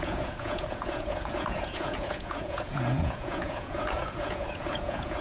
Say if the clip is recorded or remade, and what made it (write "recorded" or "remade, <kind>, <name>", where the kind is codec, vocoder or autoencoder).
remade, vocoder, Vocos